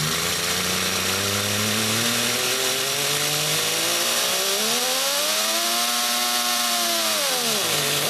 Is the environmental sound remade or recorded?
recorded